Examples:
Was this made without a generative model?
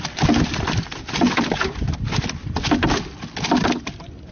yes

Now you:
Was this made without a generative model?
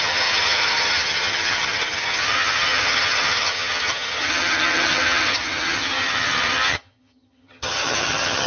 no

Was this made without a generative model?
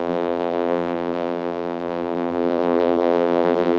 no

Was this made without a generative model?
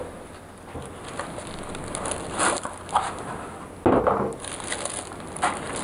yes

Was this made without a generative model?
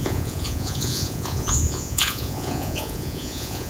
no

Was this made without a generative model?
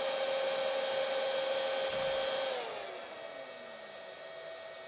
yes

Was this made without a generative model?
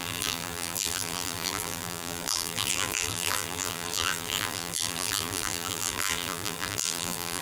no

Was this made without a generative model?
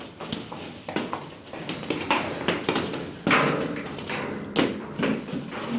yes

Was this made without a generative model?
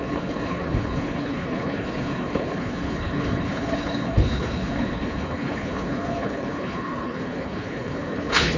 no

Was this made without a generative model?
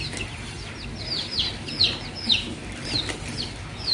yes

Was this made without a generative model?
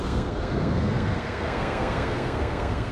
no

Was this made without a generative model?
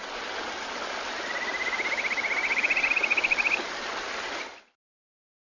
yes